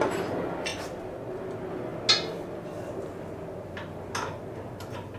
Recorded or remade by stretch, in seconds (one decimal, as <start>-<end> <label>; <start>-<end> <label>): 0.0-5.2 recorded